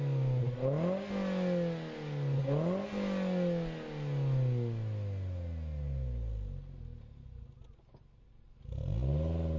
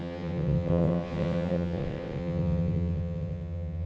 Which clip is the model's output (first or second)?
second